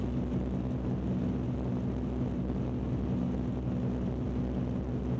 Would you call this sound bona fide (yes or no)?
yes